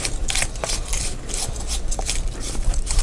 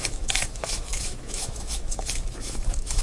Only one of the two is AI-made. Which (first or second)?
second